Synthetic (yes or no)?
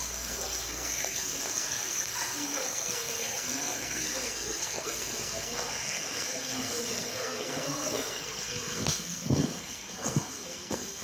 yes